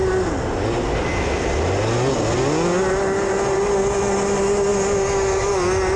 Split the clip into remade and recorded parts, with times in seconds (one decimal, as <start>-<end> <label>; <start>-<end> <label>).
0.0-6.0 recorded